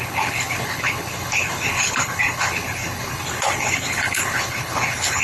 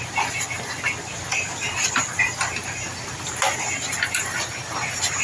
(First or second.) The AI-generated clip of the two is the first